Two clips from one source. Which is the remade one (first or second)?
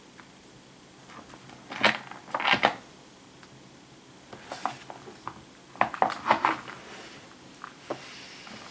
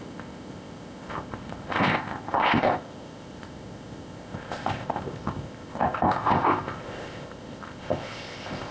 second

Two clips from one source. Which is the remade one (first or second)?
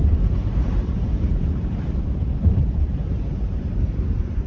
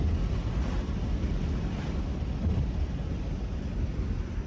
first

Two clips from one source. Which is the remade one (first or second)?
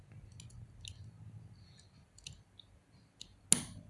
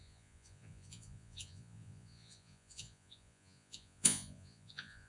second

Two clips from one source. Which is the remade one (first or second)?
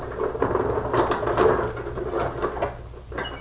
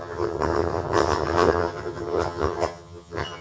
second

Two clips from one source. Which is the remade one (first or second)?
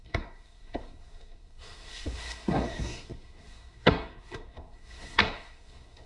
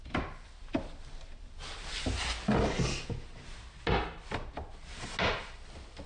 first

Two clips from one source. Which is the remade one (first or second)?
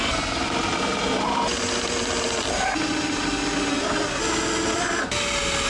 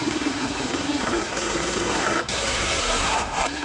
second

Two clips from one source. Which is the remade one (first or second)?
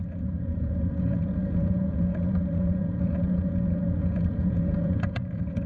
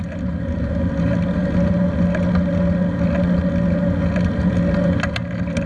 first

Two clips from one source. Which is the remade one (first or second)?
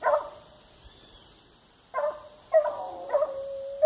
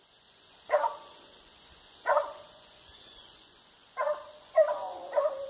second